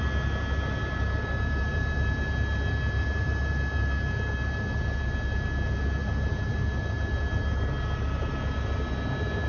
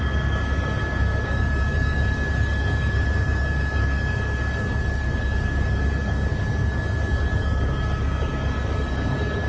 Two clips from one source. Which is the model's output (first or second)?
second